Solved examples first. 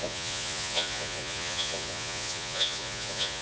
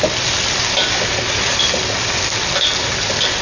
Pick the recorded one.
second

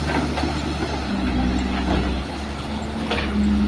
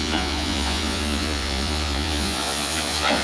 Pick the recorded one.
first